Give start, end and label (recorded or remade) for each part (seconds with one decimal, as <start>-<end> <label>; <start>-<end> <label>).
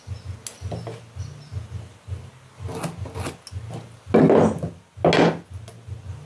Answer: 0.0-6.3 recorded